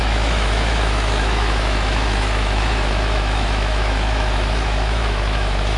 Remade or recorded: remade